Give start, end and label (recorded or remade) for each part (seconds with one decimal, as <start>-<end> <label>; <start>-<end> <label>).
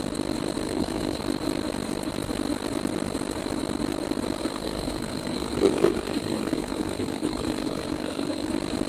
0.0-0.6 recorded; 0.6-1.2 remade; 1.2-4.4 recorded; 4.4-8.5 remade; 8.5-8.9 recorded